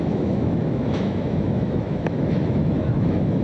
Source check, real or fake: fake